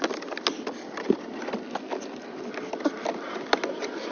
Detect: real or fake real